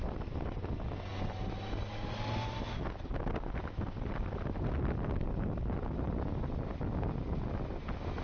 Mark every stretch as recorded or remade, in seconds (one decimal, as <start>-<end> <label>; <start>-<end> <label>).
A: 0.0-8.2 recorded